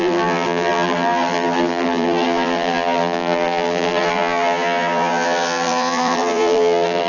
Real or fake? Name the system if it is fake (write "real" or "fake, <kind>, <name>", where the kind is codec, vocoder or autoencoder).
fake, vocoder, BigVGAN v2